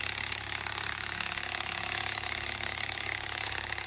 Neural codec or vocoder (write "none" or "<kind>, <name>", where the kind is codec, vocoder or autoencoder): codec, DAC